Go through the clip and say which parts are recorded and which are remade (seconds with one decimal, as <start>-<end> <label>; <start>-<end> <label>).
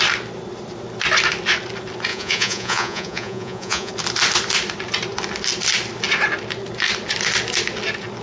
0.0-2.1 recorded; 2.1-3.9 remade; 3.9-8.2 recorded